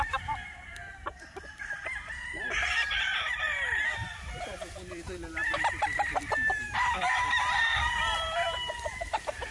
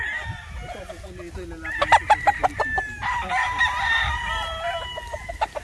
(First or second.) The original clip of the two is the second